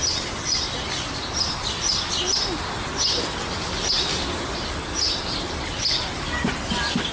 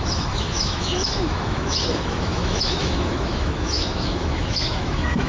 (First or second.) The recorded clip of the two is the first